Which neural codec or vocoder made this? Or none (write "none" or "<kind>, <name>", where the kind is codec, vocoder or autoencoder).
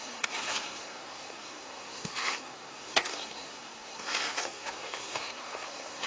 codec, SNAC